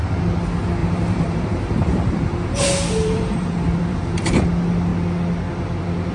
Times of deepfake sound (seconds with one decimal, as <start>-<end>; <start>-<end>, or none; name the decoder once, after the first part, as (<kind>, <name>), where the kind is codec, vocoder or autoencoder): 0.8-4.4 (vocoder, BigVGAN v2)